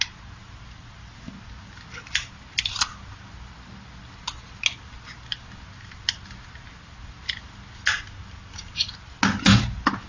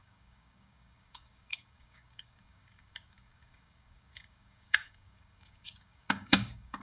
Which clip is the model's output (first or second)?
second